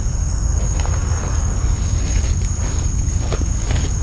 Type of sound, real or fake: fake